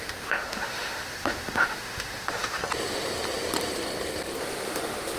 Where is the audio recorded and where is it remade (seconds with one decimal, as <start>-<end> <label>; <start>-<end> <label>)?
0.0-2.6 remade; 2.6-4.4 recorded; 4.4-5.2 remade